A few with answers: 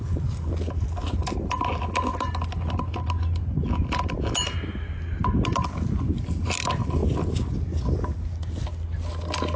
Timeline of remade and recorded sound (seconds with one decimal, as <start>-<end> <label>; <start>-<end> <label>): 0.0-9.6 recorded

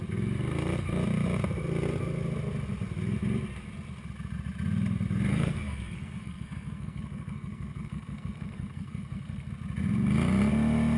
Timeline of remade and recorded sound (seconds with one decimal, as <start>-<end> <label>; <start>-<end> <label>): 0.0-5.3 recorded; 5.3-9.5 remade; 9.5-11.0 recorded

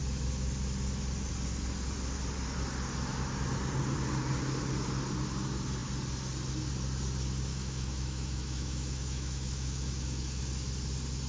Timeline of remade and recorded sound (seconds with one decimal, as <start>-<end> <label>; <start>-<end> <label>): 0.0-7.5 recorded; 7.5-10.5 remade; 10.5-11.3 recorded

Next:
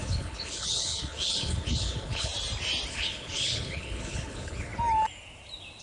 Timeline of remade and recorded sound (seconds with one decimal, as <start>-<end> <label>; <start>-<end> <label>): 0.0-2.3 remade; 2.3-2.9 recorded; 2.9-4.7 remade; 4.7-5.8 recorded

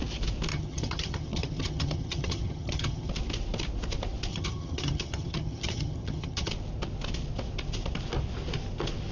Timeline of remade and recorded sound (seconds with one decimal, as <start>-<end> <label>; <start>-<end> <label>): 0.0-0.5 recorded; 0.5-3.1 remade; 3.1-4.3 recorded; 4.3-6.5 remade; 6.5-9.1 recorded

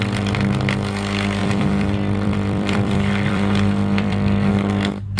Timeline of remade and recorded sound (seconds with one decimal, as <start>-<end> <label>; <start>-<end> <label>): 0.0-1.4 recorded; 1.4-4.5 remade; 4.5-5.2 recorded

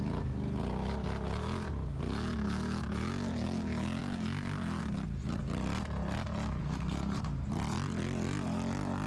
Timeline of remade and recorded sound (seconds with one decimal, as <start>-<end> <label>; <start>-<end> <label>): 0.0-6.6 recorded; 6.6-7.2 remade; 7.2-9.1 recorded

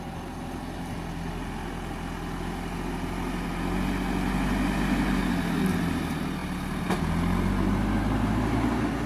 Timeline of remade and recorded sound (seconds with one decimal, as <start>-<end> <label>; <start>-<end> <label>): 0.0-9.1 recorded